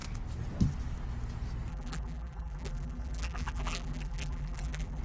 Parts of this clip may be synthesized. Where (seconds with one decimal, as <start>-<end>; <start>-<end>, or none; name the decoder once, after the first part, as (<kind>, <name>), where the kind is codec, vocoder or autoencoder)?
1.7-5.0 (vocoder, BigVGAN v2)